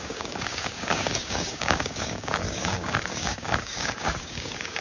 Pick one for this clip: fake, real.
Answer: fake